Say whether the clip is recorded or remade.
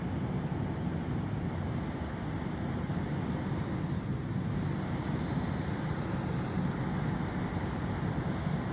recorded